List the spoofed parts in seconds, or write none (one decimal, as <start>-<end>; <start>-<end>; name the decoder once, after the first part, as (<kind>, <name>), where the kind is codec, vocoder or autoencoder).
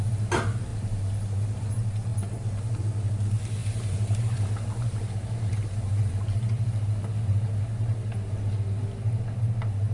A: 0.7-1.7 (vocoder, BigVGAN v2); 3.6-7.6